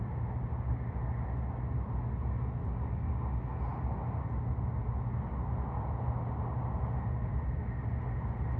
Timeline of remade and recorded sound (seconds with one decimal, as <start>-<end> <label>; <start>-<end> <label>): 0.0-8.6 recorded

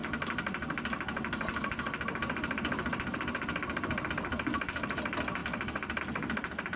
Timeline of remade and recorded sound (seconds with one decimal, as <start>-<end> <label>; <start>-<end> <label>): 0.0-6.8 recorded

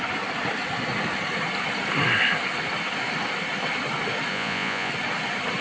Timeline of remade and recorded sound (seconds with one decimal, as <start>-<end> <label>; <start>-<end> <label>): 0.0-4.3 recorded; 4.3-4.9 remade; 4.9-5.6 recorded

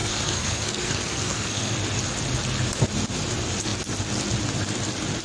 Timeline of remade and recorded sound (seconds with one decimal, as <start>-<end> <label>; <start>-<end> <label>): 0.0-1.7 remade; 1.7-5.2 recorded

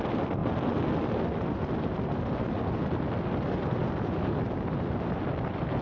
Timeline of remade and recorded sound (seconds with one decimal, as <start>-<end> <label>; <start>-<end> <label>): 0.0-5.8 recorded